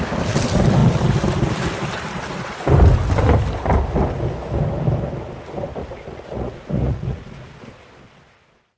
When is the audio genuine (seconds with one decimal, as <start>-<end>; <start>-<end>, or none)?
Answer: 0.0-5.8; 7.6-8.8